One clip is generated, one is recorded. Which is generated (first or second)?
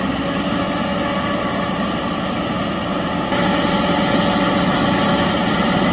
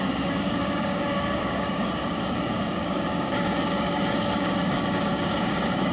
second